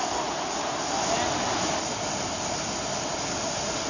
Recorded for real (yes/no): yes